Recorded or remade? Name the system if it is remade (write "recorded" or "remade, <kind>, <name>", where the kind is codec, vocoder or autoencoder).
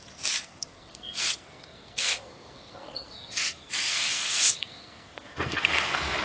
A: remade, codec, SNAC